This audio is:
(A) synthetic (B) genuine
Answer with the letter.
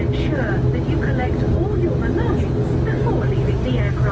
B